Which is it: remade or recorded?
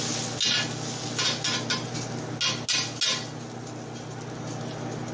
recorded